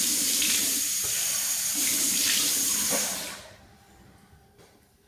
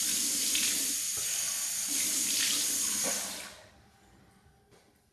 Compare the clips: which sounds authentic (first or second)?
second